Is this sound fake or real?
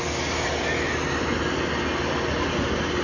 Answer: real